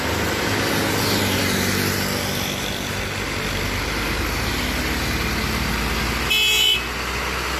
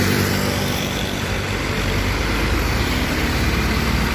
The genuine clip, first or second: first